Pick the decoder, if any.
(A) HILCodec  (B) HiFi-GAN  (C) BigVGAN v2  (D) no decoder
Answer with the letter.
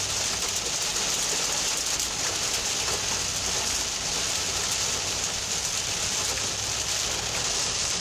D